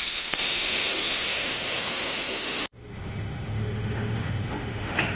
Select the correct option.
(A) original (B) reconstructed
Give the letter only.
B